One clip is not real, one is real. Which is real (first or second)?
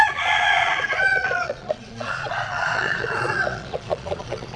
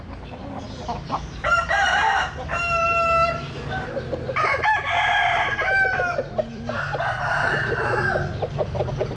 second